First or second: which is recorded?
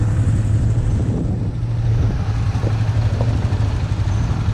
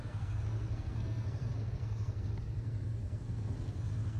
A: first